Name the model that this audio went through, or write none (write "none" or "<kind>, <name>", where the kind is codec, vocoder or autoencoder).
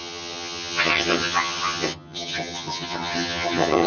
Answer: vocoder, HiFi-GAN